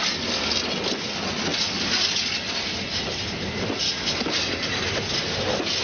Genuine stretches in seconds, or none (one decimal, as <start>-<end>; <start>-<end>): 0.0-5.8